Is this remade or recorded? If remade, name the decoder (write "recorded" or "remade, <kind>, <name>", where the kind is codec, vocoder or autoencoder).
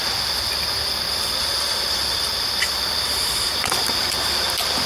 remade, vocoder, BigVGAN v2